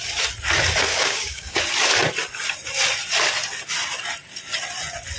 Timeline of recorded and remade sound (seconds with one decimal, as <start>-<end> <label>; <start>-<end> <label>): 0.0-0.9 recorded; 0.9-1.6 remade; 1.6-5.2 recorded